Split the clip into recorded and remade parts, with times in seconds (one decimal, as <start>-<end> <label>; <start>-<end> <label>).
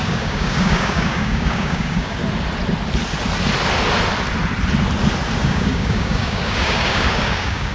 0.0-2.2 remade; 2.2-5.4 recorded; 5.4-7.7 remade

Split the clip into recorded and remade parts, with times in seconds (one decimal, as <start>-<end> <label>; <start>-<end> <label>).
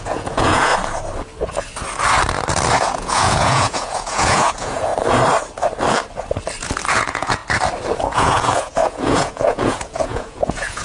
0.0-0.7 remade; 0.7-2.8 recorded; 2.8-4.9 remade; 4.9-6.9 recorded; 6.9-7.4 remade; 7.4-8.0 recorded; 8.0-10.8 remade